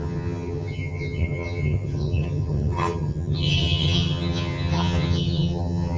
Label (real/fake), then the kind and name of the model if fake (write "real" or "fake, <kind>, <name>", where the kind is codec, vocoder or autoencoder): fake, vocoder, HiFi-GAN